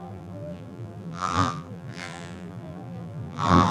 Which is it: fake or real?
fake